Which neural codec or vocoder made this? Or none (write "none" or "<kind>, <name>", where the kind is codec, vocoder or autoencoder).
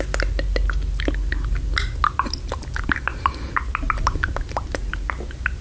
none